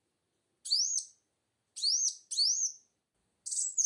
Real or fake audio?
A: real